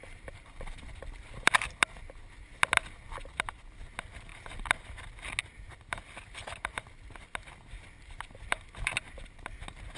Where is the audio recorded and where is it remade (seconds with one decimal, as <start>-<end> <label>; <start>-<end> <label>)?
0.0-0.9 remade; 0.9-10.0 recorded